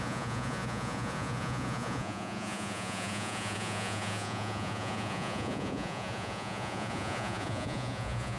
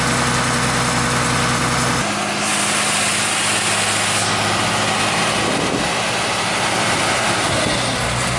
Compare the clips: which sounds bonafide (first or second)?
second